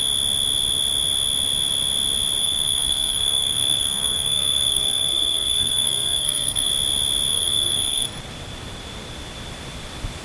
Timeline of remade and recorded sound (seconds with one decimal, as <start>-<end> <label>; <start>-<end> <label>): 0.0-2.4 recorded; 2.4-6.7 remade; 6.7-7.3 recorded; 7.3-8.2 remade; 8.2-10.2 recorded